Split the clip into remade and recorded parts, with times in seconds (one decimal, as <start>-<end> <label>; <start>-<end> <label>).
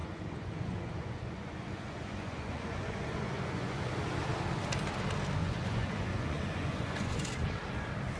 0.0-3.8 remade; 3.8-5.4 recorded; 5.4-7.3 remade; 7.3-8.2 recorded